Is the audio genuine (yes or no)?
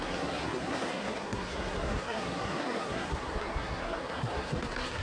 no